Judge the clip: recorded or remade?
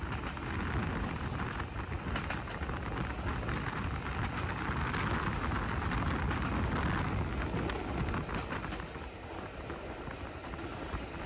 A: recorded